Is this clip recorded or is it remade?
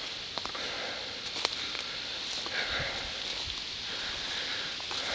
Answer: recorded